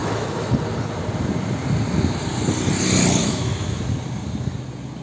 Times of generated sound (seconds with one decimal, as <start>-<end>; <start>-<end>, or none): 0.0-0.5; 3.2-3.8